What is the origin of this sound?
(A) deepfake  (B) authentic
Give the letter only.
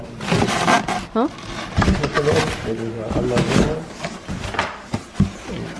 B